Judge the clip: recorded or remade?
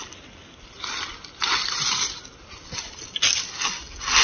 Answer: recorded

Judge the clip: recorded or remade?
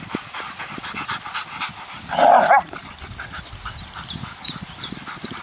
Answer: recorded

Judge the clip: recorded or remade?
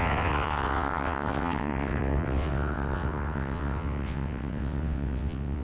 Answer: remade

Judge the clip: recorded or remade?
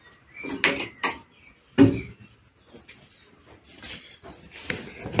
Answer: recorded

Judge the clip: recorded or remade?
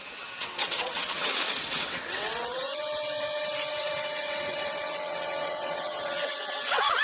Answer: remade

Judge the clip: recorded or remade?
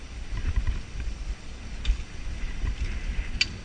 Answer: recorded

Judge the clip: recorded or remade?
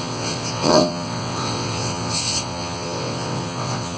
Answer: remade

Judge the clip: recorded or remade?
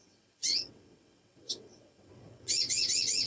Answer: remade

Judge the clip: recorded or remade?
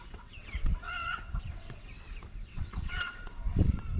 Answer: remade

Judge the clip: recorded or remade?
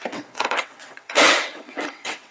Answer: remade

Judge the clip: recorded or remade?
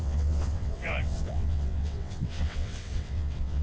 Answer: remade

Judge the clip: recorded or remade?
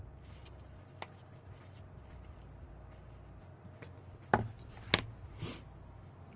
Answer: recorded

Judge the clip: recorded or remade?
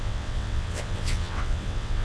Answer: remade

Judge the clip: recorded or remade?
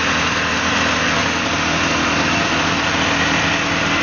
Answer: recorded